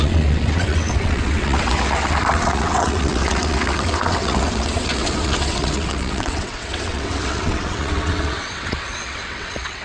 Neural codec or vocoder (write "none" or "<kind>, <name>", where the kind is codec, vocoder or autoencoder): vocoder, WaveNeXt